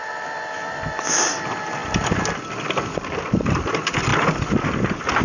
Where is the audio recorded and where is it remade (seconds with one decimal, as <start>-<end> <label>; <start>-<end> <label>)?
0.0-5.2 recorded

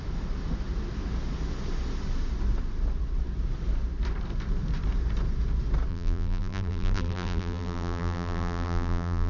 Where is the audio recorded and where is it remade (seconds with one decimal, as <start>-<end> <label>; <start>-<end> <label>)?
0.0-5.9 recorded; 5.9-9.3 remade

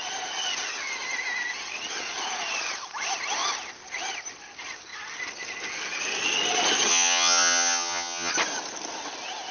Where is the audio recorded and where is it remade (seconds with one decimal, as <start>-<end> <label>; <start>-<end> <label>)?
0.0-6.9 recorded; 6.9-8.3 remade; 8.3-9.5 recorded

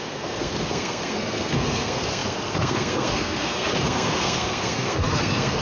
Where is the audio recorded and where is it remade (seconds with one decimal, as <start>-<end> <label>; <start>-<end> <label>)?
0.0-5.6 remade

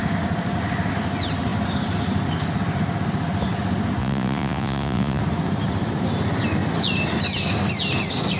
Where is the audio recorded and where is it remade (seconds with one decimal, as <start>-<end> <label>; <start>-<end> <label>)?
0.0-4.0 recorded; 4.0-5.2 remade; 5.2-8.4 recorded

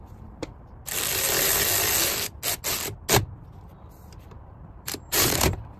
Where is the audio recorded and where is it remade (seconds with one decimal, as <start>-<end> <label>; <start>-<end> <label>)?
0.0-0.8 remade; 0.8-4.3 recorded; 4.3-5.8 remade